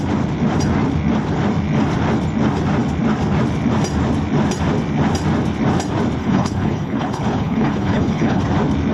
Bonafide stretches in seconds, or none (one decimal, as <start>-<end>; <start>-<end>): 0.0-6.2; 8.4-8.9